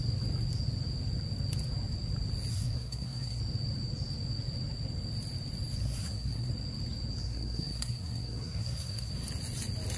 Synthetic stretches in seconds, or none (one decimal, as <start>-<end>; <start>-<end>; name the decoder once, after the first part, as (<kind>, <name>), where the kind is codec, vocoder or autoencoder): 2.5-3.4 (codec, SNAC); 5.8-6.5; 7.2-9.1